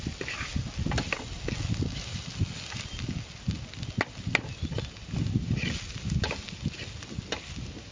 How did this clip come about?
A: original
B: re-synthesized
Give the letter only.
A